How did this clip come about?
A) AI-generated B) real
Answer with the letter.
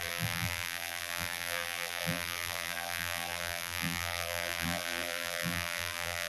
A